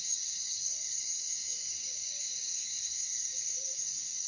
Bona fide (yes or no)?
no